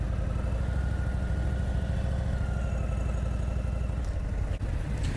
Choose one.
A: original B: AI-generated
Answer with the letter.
A